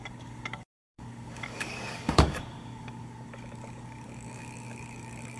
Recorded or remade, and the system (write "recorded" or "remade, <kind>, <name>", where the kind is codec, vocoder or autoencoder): remade, codec, DAC